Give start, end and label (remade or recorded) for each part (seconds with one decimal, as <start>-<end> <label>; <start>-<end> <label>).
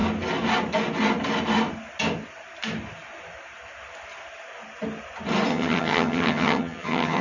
0.0-5.5 recorded; 5.5-7.2 remade